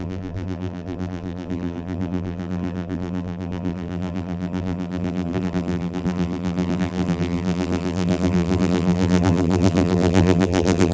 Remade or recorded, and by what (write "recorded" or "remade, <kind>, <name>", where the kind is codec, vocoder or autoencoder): remade, vocoder, BigVGAN v2